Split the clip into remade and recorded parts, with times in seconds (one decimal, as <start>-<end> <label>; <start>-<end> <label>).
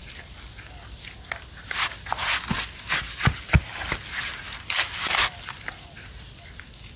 0.0-7.0 recorded